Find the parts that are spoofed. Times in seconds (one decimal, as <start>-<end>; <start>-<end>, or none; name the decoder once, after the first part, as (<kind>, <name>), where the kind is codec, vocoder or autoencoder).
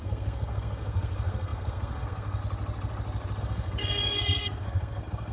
0.0-2.4 (codec, SNAC); 3.4-5.3